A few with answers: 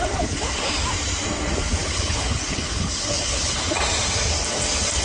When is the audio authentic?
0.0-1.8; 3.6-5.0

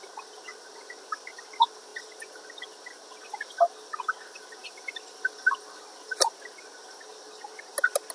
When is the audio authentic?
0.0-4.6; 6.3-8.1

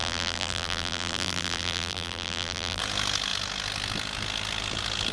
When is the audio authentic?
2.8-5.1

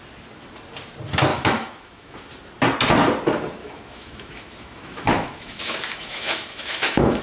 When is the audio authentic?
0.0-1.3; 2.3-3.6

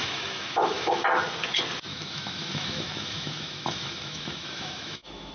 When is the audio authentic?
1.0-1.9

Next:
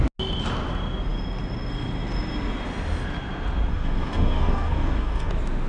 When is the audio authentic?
0.0-3.7; 5.3-5.7